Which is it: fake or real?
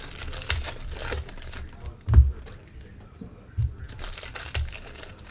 fake